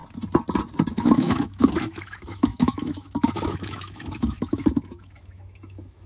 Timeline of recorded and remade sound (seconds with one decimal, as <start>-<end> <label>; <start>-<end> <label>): 0.0-0.9 recorded; 0.9-6.1 remade